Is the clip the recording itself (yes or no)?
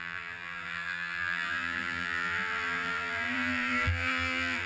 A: no